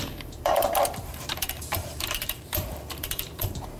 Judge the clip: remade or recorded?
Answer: remade